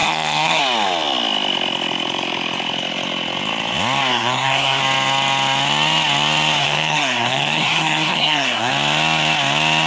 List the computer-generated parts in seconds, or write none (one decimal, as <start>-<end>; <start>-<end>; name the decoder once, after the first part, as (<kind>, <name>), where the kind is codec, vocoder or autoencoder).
0.0-0.6 (codec, SNAC); 4.1-4.8; 6.6-8.7